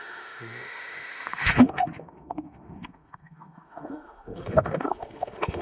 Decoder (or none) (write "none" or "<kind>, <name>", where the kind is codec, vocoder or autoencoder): autoencoder, DAC-VAE